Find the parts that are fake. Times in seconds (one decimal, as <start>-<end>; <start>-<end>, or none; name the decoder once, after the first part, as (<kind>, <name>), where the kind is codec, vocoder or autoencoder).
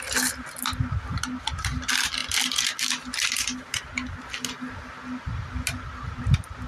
none